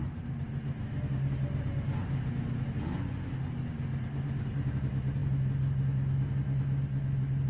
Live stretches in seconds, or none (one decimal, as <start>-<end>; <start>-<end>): 0.0-7.5